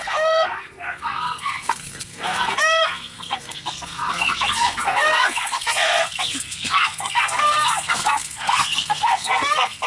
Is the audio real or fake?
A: fake